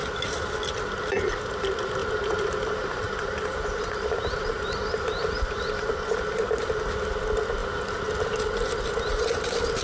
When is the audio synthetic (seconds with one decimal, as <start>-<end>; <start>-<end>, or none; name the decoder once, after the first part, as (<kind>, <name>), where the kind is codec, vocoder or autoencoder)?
2.0-6.0 (vocoder, BigVGAN v2)